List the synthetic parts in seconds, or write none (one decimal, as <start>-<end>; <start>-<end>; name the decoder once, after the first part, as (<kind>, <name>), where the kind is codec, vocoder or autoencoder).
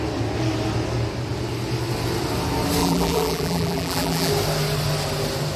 2.8-4.3 (vocoder, BigVGAN v2)